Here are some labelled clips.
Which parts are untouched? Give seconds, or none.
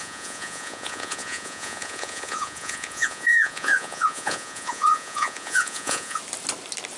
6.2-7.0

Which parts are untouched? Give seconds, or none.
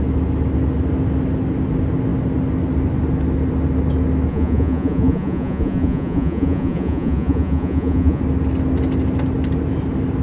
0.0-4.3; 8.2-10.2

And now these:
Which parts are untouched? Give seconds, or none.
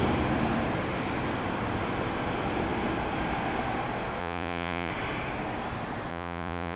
0.0-4.2; 4.9-6.1